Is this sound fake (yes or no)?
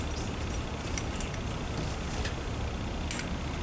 no